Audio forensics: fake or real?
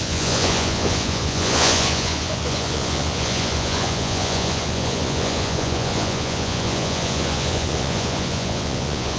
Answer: fake